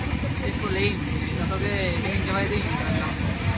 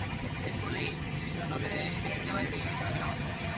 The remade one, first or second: second